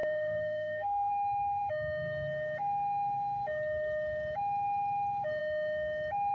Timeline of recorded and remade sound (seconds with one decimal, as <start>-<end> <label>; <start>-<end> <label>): 0.0-1.1 remade; 1.1-6.3 recorded